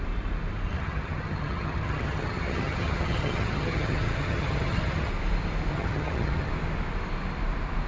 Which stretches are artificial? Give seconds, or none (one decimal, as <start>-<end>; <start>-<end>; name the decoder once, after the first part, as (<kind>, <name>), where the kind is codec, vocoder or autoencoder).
0.7-5.1 (vocoder, HiFi-GAN); 5.7-6.5